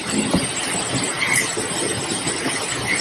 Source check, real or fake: real